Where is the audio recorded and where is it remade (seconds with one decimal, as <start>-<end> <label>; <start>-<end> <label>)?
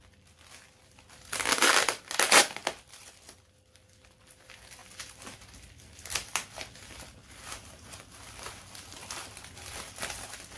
0.0-10.6 recorded